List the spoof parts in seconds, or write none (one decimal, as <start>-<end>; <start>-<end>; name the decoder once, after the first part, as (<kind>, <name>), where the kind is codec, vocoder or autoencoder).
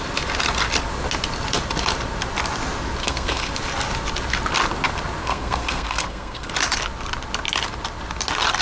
3.0-3.5 (codec, SNAC); 5.2-6.5